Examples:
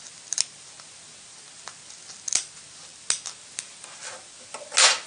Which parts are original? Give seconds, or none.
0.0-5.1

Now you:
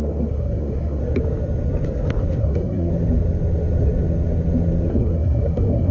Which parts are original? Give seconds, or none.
1.0-2.4; 2.9-4.9

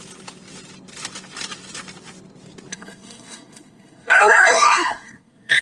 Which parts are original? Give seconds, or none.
0.0-2.7

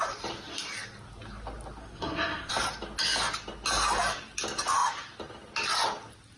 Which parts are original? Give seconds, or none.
0.0-1.8; 2.5-6.4

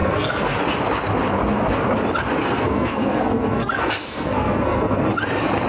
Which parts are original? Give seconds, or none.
0.6-2.4; 5.1-5.7

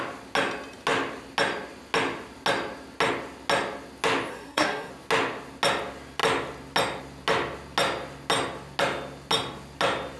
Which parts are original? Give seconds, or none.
0.0-4.3; 4.9-10.2

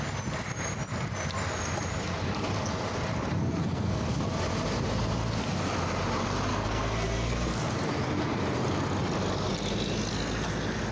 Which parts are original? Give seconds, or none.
0.0-3.4; 4.2-6.5; 7.7-10.9

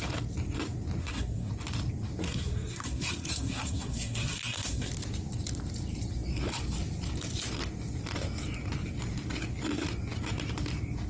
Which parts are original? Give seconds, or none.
0.0-1.0; 1.5-2.2; 4.9-11.1